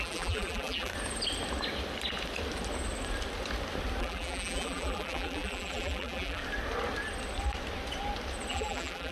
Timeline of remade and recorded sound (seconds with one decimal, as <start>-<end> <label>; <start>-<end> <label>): 0.0-0.9 remade; 0.9-4.0 recorded; 4.0-6.4 remade; 6.4-8.5 recorded; 8.5-9.1 remade